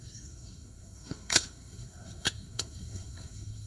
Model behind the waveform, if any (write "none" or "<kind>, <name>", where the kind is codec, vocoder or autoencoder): codec, SNAC